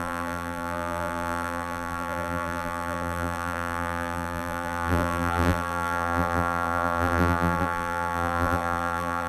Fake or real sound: fake